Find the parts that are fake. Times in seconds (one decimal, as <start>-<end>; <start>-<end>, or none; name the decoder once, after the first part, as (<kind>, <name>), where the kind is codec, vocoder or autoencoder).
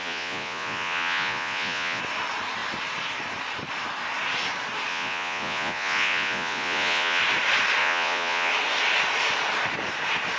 0.0-2.0 (vocoder, Vocos); 4.9-7.2; 7.8-8.5